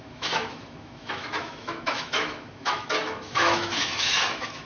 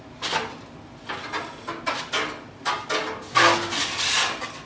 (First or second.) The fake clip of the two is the first